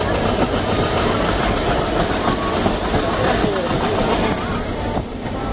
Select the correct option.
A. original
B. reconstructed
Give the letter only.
A